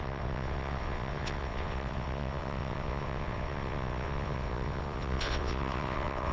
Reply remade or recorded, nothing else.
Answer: remade